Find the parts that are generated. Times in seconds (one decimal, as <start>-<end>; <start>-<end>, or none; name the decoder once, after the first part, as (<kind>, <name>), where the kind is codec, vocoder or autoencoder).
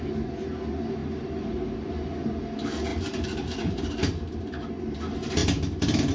2.9-4.7 (vocoder, BigVGAN v2)